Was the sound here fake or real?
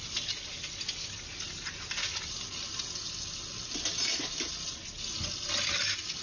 real